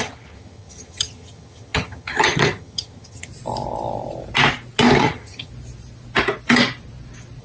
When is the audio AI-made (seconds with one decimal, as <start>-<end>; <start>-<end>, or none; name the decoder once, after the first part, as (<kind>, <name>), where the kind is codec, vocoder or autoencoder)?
0.0-3.3 (vocoder, HiFi-GAN); 5.0-5.5